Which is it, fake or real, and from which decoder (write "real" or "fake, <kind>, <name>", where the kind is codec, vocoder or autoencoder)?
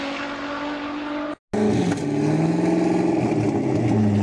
real